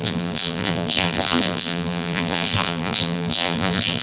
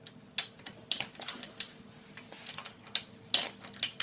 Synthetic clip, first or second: first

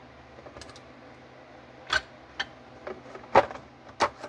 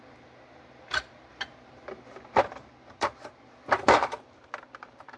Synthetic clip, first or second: second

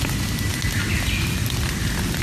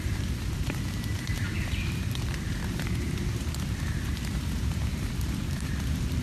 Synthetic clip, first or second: second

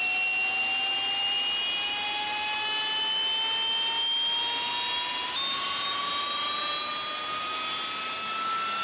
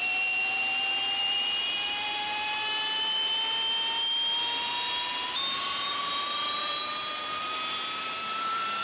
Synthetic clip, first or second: second